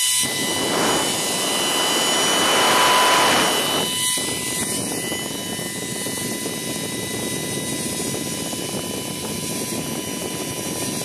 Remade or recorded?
recorded